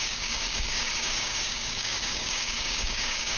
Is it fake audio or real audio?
fake